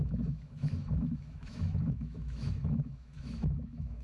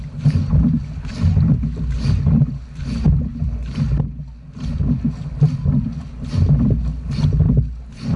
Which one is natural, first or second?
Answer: second